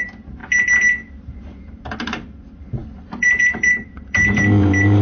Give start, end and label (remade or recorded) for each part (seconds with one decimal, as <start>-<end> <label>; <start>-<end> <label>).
0.0-0.4 remade; 0.4-1.2 recorded; 1.2-5.0 remade